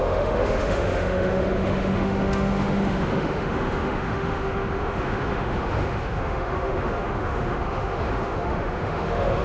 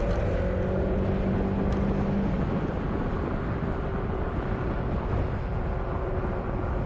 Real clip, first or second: second